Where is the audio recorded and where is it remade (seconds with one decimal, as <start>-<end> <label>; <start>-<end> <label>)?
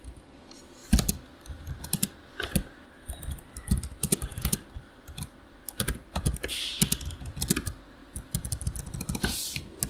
0.0-4.3 recorded; 4.3-6.2 remade; 6.2-8.0 recorded; 8.0-9.9 remade